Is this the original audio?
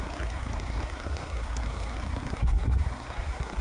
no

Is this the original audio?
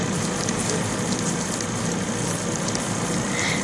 yes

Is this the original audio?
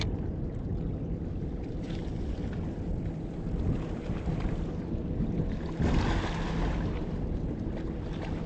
yes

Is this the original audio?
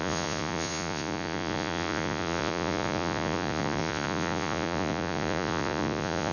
no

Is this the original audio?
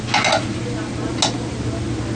yes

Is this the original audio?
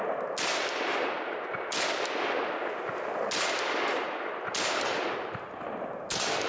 yes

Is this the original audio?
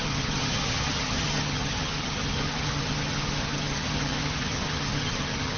no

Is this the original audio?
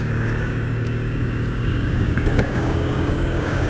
no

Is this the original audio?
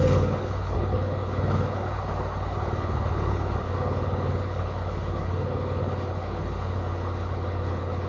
no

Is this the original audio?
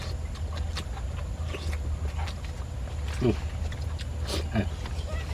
yes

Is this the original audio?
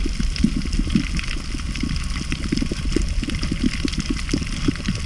yes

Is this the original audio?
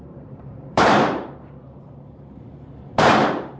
no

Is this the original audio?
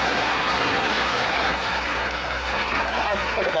no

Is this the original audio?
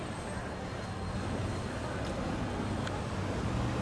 yes